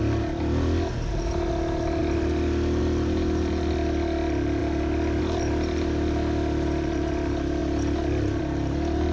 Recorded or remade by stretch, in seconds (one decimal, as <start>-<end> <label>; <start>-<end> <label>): 0.0-9.1 recorded